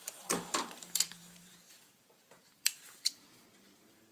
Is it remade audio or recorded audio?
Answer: remade